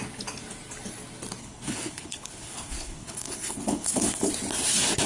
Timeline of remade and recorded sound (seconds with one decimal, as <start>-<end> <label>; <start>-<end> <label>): 0.0-1.4 recorded; 1.4-4.3 remade; 4.3-5.1 recorded